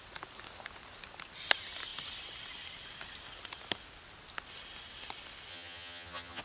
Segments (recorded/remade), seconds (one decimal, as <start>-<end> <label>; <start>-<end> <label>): 0.0-5.5 recorded; 5.5-6.4 remade